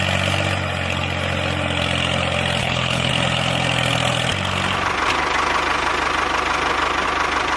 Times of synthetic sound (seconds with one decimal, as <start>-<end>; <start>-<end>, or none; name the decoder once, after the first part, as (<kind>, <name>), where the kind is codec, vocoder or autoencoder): 2.6-3.1 (codec, HILCodec)